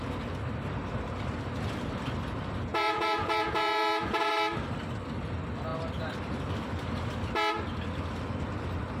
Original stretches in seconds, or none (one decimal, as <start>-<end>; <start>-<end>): 0.0-2.7; 4.3-9.0